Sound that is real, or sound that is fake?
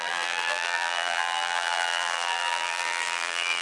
fake